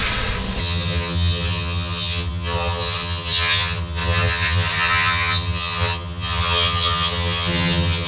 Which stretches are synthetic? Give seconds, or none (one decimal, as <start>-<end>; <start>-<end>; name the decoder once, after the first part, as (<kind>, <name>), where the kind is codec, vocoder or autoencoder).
0.6-8.1 (vocoder, HiFi-GAN)